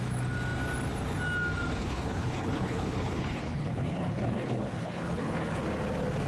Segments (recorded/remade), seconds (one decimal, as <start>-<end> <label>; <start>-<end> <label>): 0.0-1.8 recorded; 1.8-5.6 remade; 5.6-6.3 recorded